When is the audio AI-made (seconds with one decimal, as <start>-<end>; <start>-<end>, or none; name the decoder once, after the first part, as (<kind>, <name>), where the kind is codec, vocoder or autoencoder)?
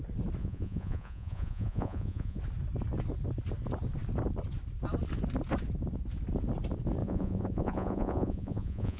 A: 0.4-2.4 (vocoder, Vocos); 7.0-9.0